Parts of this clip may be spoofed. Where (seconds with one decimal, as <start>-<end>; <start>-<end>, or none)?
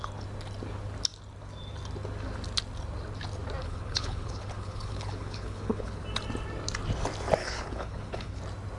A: 3.6-6.0; 7.4-8.4